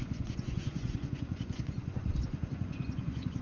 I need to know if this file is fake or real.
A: fake